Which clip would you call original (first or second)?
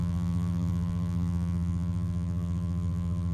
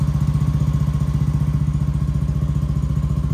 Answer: second